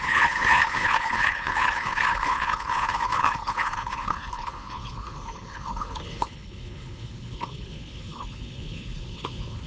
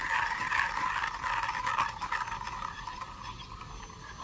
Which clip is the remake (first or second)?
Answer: first